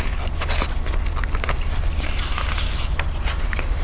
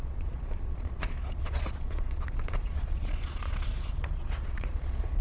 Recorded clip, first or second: first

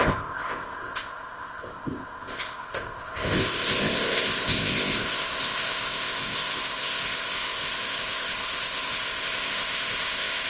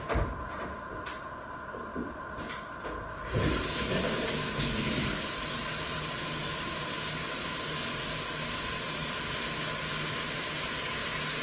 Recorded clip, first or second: second